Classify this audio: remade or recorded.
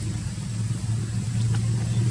recorded